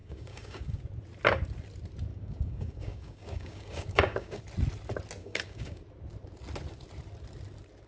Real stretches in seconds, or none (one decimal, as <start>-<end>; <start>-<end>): 0.8-2.1; 4.4-5.2; 5.8-7.9